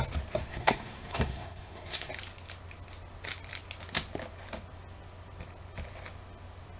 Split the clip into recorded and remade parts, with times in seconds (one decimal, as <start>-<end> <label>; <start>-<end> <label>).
0.0-0.5 recorded; 0.5-2.1 remade; 2.1-6.8 recorded